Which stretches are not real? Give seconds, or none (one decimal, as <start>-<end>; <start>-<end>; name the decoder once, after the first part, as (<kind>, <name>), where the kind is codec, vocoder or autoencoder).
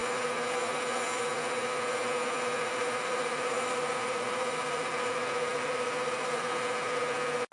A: 2.7-5.1 (vocoder, BigVGAN v2); 5.5-6.4